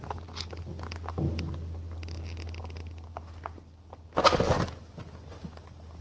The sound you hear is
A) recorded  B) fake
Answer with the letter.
A